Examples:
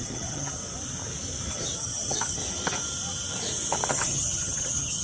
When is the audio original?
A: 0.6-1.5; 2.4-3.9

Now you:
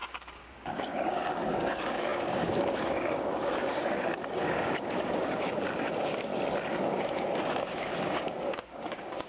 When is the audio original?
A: 6.3-6.8

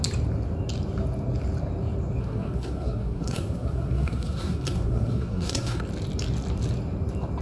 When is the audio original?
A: 0.0-2.2; 5.8-7.4